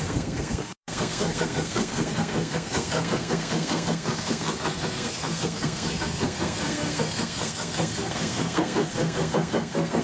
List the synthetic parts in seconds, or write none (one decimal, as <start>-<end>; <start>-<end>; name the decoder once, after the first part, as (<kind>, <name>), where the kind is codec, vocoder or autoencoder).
0.0-10.0 (codec, SNAC)